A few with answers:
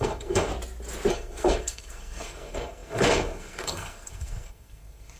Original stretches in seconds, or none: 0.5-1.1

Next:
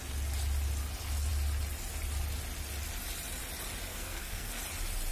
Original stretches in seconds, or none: 0.0-3.9; 4.6-5.1

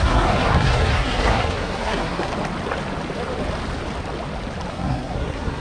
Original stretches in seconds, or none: 2.3-4.7

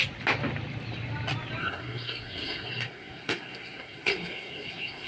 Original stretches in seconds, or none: 0.0-1.6